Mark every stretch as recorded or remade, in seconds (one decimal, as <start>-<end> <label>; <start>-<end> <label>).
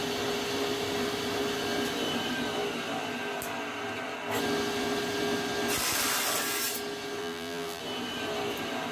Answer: 0.0-7.2 recorded; 7.2-7.8 remade; 7.8-8.9 recorded